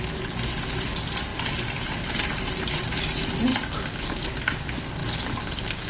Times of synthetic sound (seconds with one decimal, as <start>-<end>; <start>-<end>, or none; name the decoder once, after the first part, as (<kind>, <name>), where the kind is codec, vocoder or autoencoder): none